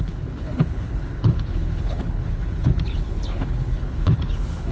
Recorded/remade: remade